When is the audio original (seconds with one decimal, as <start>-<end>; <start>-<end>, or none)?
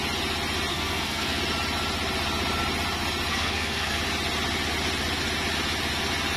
0.0-0.7; 1.4-3.3; 4.0-6.4